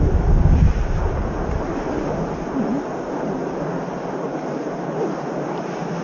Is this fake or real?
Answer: real